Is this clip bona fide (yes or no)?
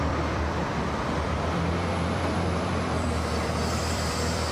no